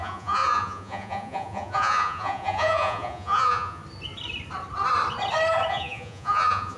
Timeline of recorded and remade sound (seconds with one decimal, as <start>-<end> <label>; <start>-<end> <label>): 0.0-3.8 remade; 3.8-5.7 recorded; 5.7-6.8 remade